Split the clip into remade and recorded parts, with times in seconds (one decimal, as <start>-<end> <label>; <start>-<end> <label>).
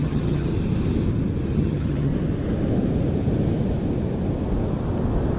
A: 0.0-0.5 remade; 0.5-1.5 recorded; 1.5-2.1 remade; 2.1-5.4 recorded